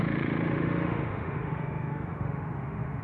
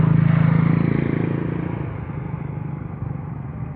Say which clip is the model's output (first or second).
first